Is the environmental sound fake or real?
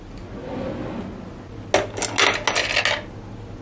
real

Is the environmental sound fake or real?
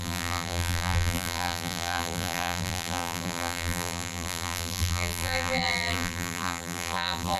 fake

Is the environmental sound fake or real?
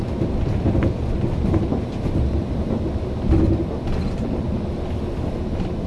real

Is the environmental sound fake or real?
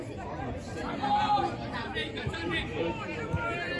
real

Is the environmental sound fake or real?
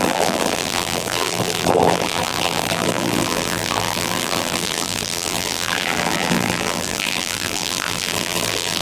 fake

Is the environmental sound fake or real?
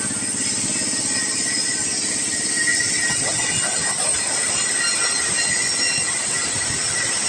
real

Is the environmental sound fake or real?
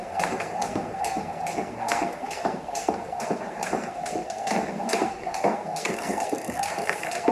fake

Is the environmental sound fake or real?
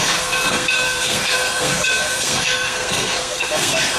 fake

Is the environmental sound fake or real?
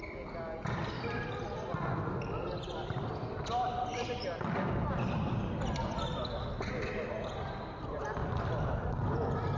real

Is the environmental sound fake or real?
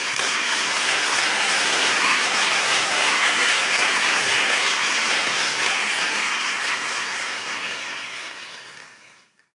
fake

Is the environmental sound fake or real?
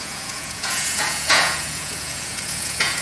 fake